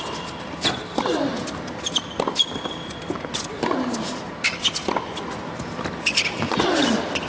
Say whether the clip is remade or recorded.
recorded